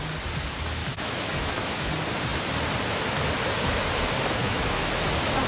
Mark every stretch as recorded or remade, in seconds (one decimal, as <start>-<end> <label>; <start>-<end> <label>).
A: 0.0-0.8 recorded; 0.8-1.9 remade; 1.9-4.4 recorded; 4.4-4.9 remade; 4.9-5.5 recorded